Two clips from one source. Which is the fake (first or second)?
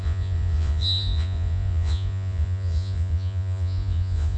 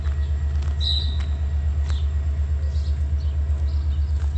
first